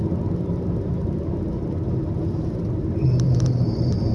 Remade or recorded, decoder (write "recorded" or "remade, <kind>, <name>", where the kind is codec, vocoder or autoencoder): recorded